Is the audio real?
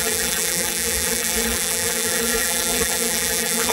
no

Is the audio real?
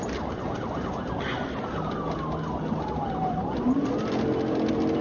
yes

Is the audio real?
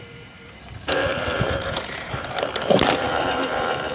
no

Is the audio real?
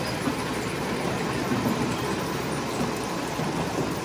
no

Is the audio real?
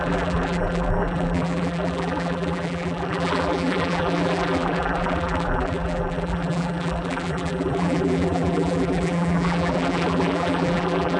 no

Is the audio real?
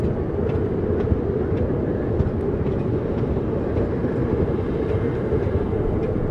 yes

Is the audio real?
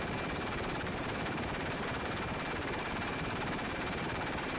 no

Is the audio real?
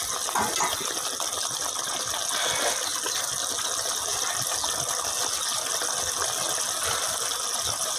yes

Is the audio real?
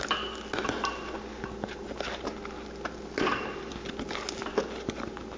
yes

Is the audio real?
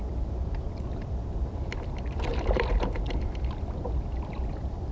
no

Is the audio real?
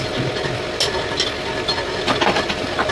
yes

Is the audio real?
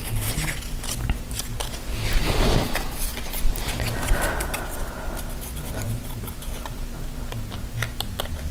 yes